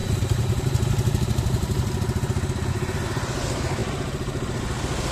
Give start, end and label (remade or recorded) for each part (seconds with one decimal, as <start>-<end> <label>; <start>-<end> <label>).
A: 0.0-5.1 recorded